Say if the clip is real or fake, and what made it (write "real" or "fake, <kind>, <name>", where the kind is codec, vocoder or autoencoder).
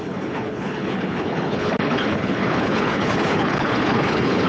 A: fake, codec, HILCodec